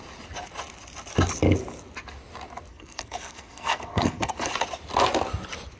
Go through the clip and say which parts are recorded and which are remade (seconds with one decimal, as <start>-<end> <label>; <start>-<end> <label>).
0.0-2.7 recorded; 2.7-4.5 remade; 4.5-5.8 recorded